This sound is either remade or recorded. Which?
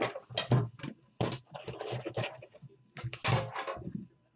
recorded